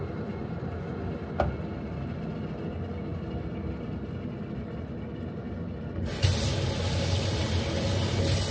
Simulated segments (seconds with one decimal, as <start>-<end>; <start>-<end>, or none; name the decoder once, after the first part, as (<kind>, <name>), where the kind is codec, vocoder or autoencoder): none